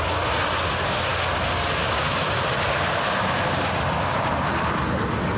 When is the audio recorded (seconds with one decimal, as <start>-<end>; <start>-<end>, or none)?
0.0-5.4